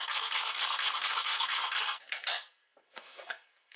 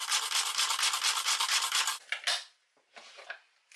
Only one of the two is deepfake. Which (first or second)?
first